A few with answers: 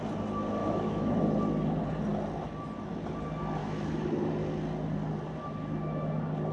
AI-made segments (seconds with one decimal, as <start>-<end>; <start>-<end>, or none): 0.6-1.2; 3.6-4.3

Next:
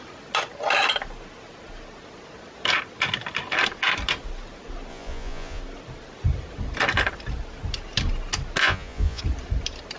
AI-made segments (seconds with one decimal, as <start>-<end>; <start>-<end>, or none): 4.9-5.6; 8.6-9.2

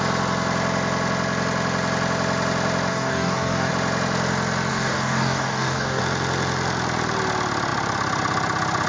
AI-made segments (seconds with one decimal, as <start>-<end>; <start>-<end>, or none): 2.9-3.7; 4.7-6.0